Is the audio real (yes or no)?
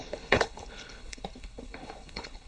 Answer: no